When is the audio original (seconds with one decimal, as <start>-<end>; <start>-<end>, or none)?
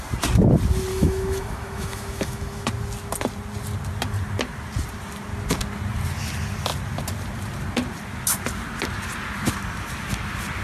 0.0-0.9; 2.7-10.6